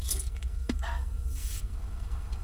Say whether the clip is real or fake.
fake